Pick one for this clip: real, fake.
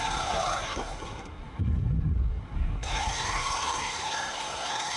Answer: fake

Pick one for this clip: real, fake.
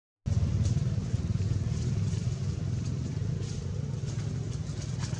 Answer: real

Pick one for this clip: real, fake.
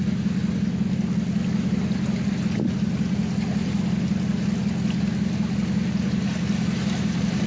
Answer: real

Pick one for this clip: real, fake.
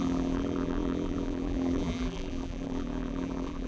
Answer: fake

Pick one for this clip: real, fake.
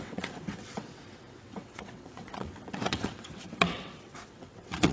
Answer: fake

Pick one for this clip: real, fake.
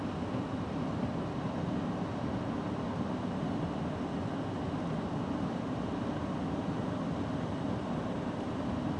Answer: real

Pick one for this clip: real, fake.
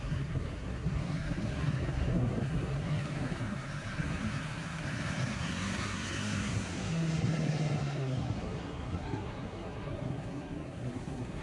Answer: fake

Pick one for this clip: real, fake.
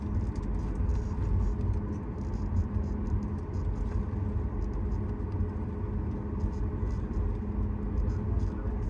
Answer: real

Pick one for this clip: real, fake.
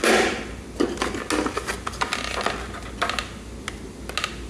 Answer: real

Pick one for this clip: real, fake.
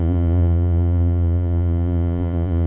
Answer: fake